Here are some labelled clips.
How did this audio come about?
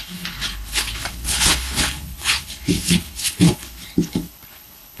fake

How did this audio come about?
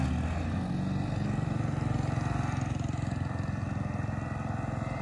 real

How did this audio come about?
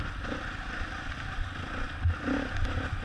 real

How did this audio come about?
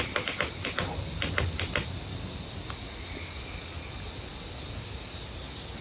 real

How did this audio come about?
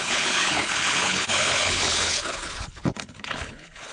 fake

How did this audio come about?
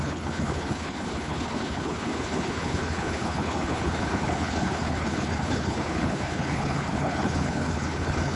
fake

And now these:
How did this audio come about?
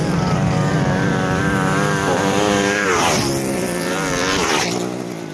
real